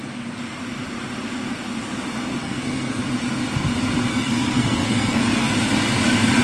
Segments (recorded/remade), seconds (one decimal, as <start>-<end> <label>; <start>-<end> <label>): 0.0-2.4 recorded; 2.4-3.0 remade; 3.0-4.1 recorded; 4.1-5.5 remade; 5.5-6.4 recorded